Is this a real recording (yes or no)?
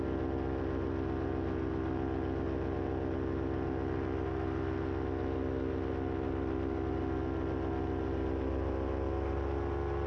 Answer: yes